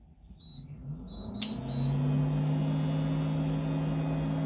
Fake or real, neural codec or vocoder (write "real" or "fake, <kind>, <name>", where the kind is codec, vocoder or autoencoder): real